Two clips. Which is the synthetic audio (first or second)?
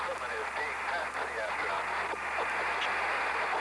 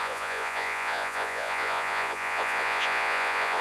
second